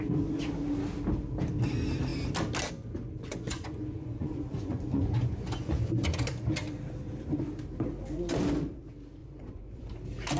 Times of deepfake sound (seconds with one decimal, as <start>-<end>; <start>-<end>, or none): 3.3-6.3; 9.2-9.9